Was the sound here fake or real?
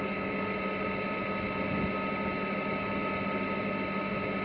real